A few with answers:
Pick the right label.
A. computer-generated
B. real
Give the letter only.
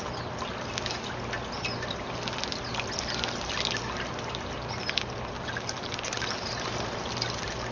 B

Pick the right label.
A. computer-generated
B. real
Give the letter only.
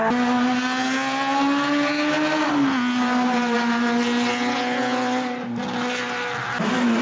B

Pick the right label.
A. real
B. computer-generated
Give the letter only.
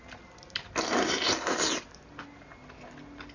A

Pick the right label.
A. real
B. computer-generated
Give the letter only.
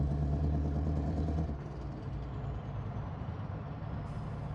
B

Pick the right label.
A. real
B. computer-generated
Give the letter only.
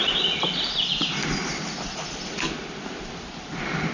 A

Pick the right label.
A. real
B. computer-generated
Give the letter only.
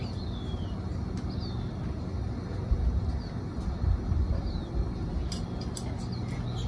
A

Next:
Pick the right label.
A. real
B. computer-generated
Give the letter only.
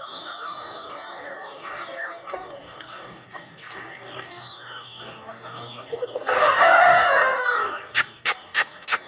B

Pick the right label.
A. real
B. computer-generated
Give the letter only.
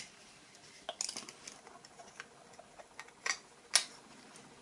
A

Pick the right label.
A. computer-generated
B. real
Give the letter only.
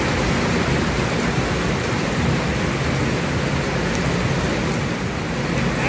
B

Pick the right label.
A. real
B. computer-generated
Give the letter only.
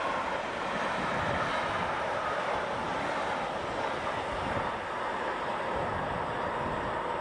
A